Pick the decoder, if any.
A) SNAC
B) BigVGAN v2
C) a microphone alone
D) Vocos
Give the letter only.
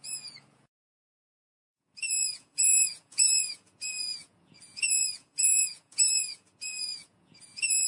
D